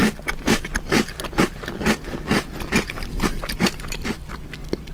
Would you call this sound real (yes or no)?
yes